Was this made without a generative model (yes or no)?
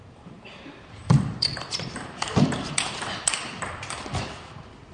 no